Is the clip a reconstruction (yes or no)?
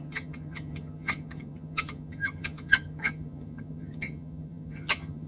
yes